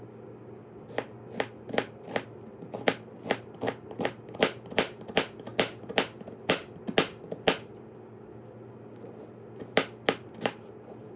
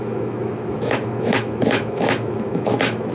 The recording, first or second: first